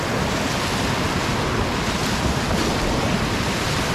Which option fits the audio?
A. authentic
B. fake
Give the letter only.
A